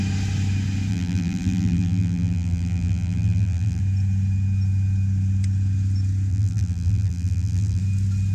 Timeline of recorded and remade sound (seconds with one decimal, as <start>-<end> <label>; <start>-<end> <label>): 0.0-0.9 recorded; 0.9-3.8 remade; 3.8-6.3 recorded; 6.3-7.8 remade; 7.8-8.3 recorded